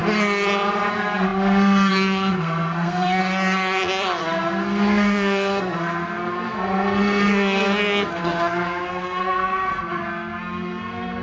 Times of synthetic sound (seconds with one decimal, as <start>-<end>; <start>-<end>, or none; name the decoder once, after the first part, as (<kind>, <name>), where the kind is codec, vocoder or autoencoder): 0.9-3.2 (codec, SNAC); 4.2-11.2